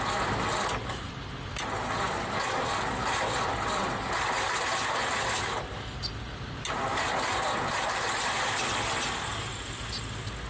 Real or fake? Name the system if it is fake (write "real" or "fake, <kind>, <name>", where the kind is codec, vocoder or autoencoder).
real